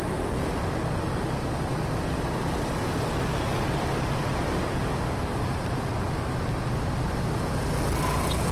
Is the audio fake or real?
real